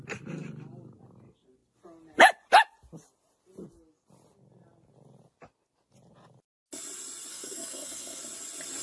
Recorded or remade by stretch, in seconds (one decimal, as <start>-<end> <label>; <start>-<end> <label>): 0.0-7.3 recorded; 7.3-8.2 remade; 8.2-8.8 recorded